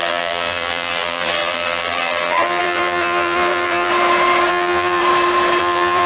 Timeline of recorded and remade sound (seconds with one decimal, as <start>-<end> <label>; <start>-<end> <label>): 0.0-3.9 remade; 3.9-4.5 recorded; 4.5-5.0 remade; 5.0-5.6 recorded; 5.6-6.1 remade